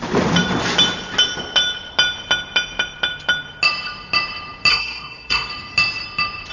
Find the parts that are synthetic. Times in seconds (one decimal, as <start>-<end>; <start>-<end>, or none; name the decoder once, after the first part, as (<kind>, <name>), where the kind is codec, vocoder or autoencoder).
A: 4.7-5.5 (codec, SNAC)